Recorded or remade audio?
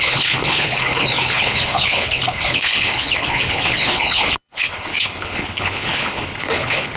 remade